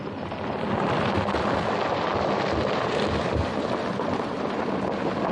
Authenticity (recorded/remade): recorded